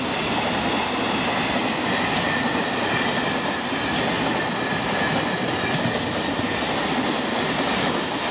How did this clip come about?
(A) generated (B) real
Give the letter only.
B